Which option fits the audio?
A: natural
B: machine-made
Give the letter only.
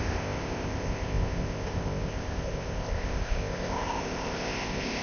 B